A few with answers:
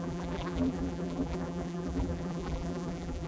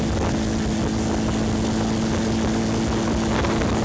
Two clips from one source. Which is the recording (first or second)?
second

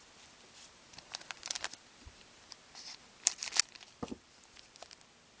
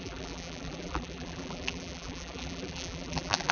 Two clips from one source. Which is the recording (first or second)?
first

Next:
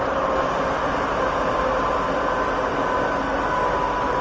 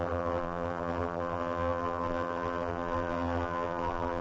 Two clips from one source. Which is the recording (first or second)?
first